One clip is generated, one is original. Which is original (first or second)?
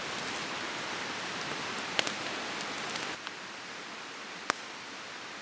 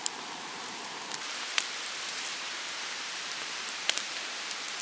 first